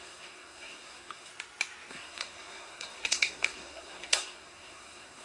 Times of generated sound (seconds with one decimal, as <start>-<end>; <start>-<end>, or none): 0.0-1.3; 1.9-5.2